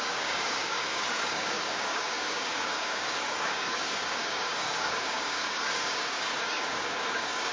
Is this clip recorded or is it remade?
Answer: remade